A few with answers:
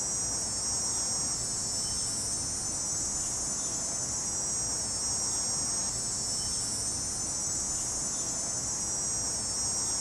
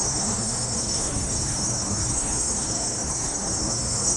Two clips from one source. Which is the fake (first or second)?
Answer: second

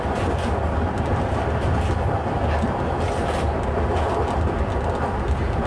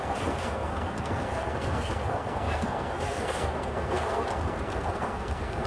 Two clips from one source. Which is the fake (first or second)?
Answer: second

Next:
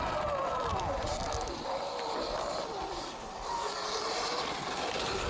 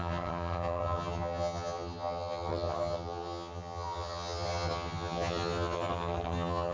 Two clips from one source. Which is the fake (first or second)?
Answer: second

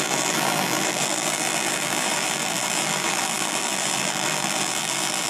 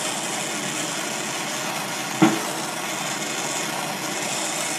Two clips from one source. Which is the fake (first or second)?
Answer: first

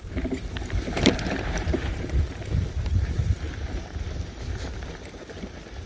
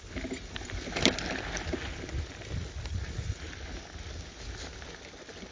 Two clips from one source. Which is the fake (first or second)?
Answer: first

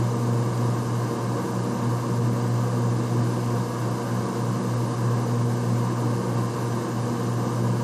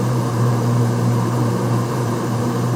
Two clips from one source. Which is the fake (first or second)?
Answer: second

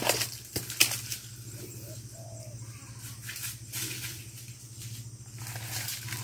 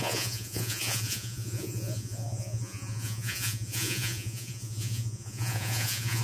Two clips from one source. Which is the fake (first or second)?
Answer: second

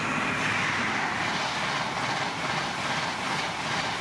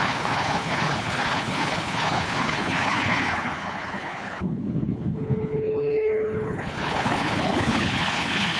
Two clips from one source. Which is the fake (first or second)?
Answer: second